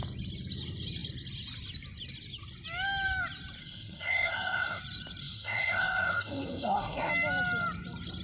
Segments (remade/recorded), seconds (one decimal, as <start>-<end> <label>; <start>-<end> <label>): 0.0-3.6 recorded; 3.6-4.8 remade; 4.8-5.2 recorded; 5.2-7.1 remade; 7.1-8.2 recorded